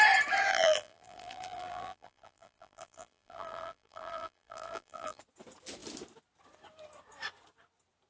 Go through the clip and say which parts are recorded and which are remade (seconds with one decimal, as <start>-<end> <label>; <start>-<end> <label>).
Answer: 0.0-0.5 recorded; 0.5-5.2 remade; 5.2-8.1 recorded